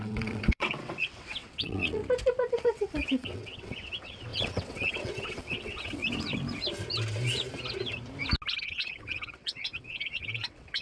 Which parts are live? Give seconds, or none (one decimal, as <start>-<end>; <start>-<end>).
2.0-2.5; 6.0-8.6